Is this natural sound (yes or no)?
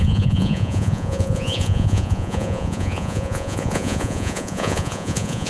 no